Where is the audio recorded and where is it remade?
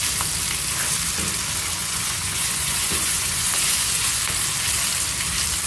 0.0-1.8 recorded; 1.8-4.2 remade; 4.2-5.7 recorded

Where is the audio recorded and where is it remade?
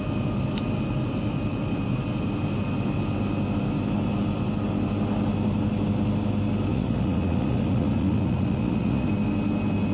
0.0-6.7 recorded; 6.7-9.1 remade; 9.1-9.9 recorded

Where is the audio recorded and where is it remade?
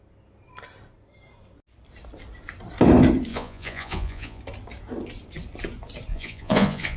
0.0-3.3 recorded; 3.3-4.4 remade; 4.4-6.1 recorded; 6.1-7.0 remade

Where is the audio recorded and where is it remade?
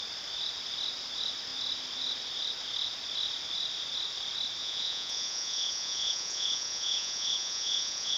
0.0-4.6 recorded; 4.6-8.2 remade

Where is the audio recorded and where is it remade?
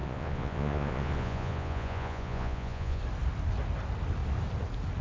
0.0-3.0 remade; 3.0-5.0 recorded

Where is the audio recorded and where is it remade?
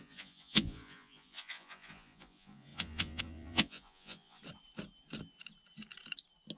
0.0-4.4 remade; 4.4-6.6 recorded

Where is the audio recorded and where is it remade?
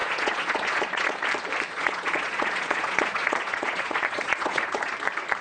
0.0-1.2 remade; 1.2-1.7 recorded; 1.7-4.9 remade; 4.9-5.4 recorded